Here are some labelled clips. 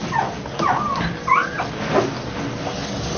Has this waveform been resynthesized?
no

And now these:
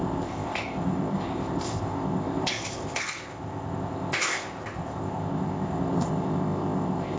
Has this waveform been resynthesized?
yes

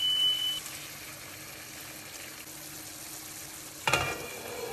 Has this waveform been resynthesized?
no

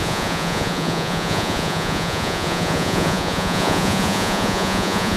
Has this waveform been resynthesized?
yes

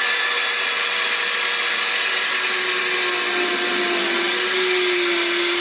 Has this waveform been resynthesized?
no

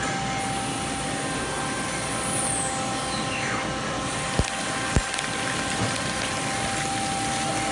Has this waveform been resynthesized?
no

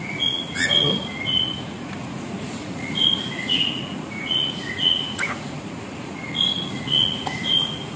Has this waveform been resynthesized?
yes